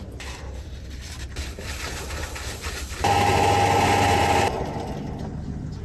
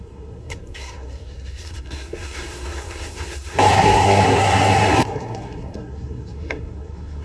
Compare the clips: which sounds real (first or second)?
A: first